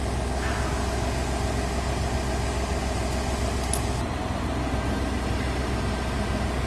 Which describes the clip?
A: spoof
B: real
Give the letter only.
B